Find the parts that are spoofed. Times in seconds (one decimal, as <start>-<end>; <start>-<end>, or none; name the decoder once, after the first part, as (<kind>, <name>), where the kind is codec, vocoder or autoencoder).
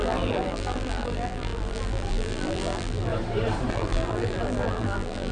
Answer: 0.0-3.1 (vocoder, BigVGAN v2); 3.7-5.3